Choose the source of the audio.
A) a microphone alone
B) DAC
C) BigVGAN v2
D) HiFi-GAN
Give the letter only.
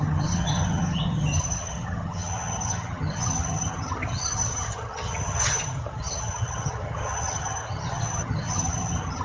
D